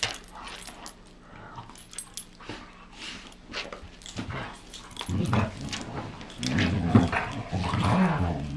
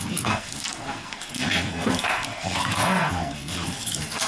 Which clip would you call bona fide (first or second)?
first